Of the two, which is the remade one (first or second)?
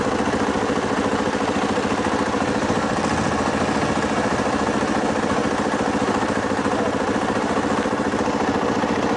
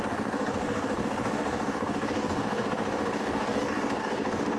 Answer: second